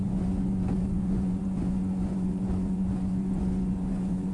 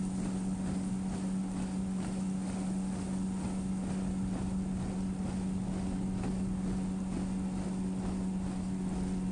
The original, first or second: second